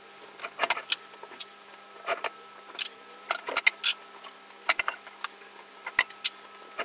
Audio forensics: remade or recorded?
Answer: recorded